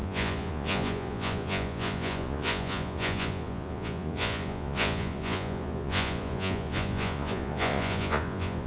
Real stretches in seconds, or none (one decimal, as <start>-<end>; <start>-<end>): none